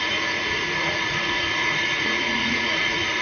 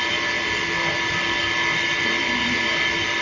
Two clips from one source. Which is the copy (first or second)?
first